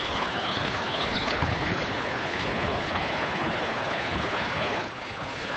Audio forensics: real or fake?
fake